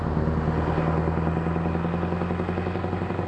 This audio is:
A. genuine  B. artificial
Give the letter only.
A